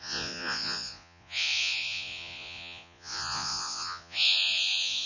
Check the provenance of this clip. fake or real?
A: fake